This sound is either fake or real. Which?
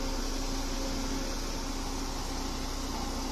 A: real